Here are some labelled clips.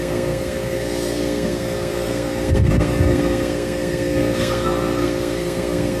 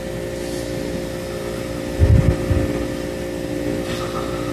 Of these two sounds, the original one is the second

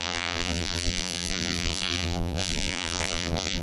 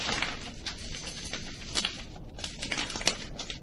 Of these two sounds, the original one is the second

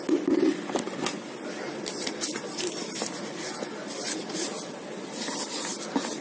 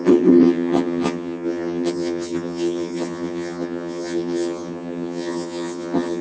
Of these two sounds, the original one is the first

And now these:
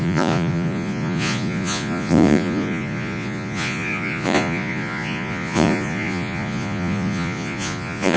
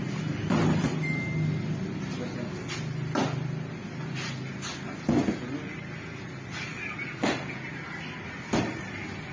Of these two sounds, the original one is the second